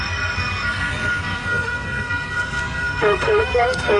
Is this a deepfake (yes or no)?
yes